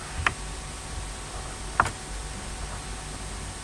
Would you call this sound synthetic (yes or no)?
no